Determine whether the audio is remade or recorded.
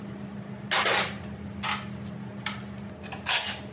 recorded